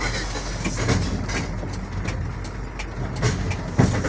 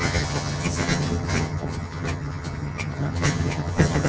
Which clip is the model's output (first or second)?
second